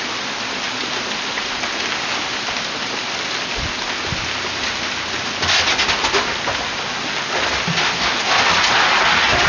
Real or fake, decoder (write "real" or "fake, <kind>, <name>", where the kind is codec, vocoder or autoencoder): real